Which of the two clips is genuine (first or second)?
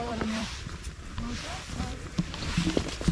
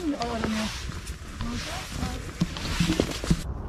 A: second